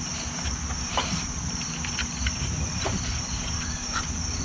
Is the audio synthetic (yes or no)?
no